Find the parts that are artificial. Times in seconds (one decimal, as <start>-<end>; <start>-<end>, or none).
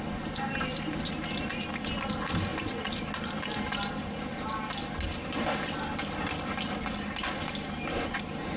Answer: none